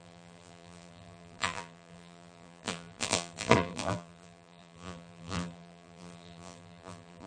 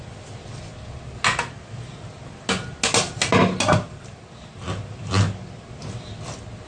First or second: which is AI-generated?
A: first